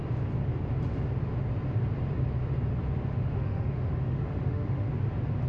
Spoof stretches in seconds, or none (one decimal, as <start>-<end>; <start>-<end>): 3.1-4.9